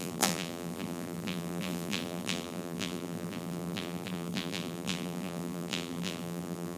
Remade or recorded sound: remade